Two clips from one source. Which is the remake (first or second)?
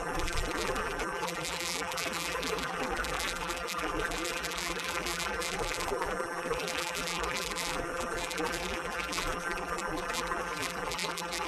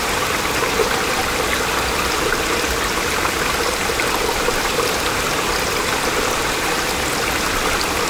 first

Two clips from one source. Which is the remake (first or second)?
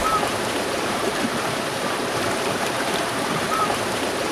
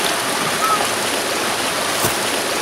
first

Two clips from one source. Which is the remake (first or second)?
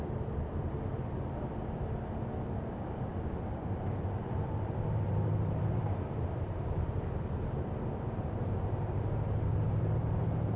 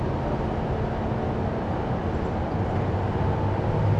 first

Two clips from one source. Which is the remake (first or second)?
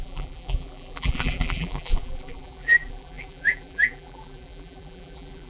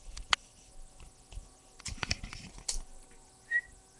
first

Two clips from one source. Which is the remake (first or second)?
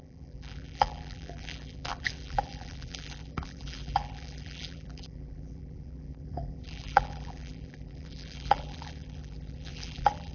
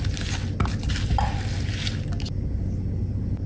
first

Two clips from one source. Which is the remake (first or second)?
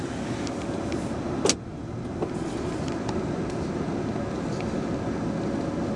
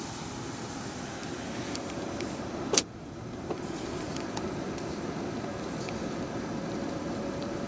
second